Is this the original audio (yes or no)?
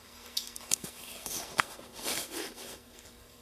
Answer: no